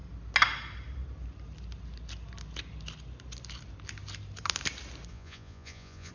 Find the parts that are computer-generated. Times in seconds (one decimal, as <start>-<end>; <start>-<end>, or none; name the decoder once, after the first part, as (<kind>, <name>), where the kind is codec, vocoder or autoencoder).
5.1-6.1 (vocoder, Vocos)